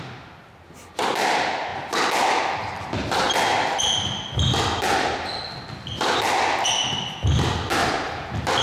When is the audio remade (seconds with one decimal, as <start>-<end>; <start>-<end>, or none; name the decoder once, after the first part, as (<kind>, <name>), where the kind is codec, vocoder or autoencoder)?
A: none